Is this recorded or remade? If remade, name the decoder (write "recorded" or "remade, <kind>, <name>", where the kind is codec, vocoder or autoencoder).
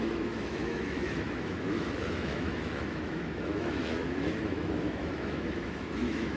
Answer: remade, autoencoder, DAC-VAE